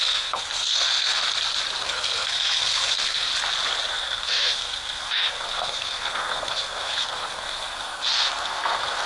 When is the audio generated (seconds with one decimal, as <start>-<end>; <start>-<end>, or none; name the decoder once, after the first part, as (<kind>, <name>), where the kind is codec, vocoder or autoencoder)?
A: 0.0-1.2 (codec, SNAC); 1.8-3.3; 3.9-9.1